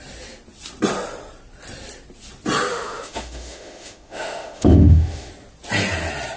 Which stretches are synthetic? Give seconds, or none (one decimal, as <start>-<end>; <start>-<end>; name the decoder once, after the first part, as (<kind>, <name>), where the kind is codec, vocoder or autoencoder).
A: 2.7-5.3 (autoencoder, DAC-VAE)